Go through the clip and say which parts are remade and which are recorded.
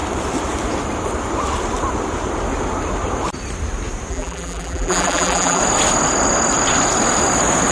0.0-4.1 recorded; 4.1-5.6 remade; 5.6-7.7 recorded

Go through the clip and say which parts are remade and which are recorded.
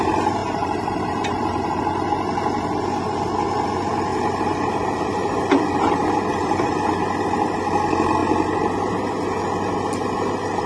0.0-0.4 recorded; 0.4-1.8 remade; 1.8-4.1 recorded; 4.1-7.2 remade; 7.2-10.7 recorded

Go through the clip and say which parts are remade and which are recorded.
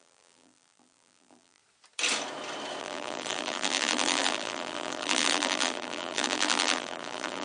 0.0-1.6 remade; 1.6-2.8 recorded; 2.8-7.4 remade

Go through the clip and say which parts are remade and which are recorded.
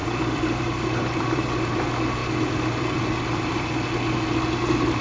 0.0-1.8 remade; 1.8-2.2 recorded; 2.2-3.7 remade; 3.7-5.0 recorded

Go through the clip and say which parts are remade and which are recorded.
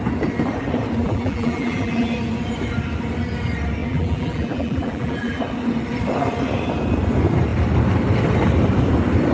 0.0-1.0 recorded; 1.0-2.1 remade; 2.1-3.8 recorded; 3.8-5.4 remade; 5.4-9.3 recorded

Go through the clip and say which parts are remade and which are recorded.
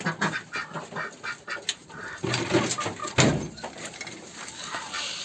0.0-1.8 recorded; 1.8-2.4 remade; 2.4-3.0 recorded; 3.0-4.0 remade; 4.0-5.2 recorded